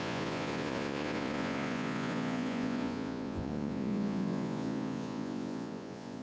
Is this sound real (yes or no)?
no